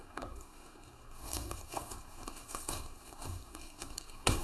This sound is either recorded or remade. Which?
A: remade